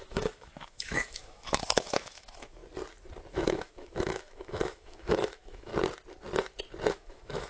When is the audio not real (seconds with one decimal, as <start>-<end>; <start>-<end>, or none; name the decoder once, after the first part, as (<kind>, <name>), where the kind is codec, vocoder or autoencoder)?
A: 0.0-2.6 (autoencoder, DAC-VAE); 3.3-5.7; 6.9-7.5

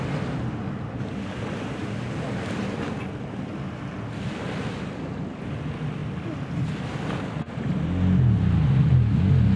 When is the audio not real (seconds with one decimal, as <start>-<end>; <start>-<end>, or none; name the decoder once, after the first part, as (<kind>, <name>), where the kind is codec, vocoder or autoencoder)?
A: none

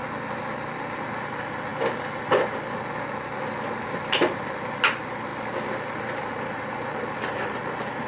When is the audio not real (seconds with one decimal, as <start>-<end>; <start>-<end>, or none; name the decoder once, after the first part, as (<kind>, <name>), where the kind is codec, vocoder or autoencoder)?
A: none

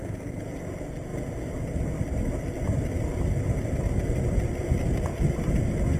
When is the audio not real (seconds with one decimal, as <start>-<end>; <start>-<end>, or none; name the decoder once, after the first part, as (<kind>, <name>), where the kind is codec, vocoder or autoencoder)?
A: none

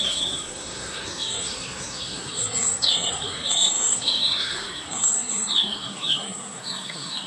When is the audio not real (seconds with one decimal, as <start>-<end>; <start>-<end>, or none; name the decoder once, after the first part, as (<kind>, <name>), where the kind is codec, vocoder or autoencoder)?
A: 0.0-7.3 (codec, SNAC)